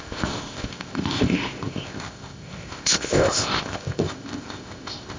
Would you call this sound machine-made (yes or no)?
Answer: yes